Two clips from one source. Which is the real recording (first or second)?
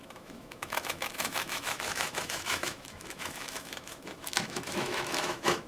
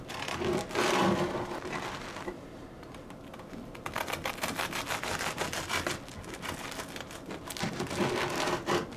second